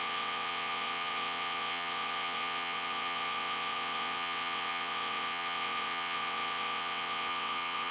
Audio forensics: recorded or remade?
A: remade